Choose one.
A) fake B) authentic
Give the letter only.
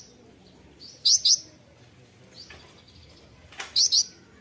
B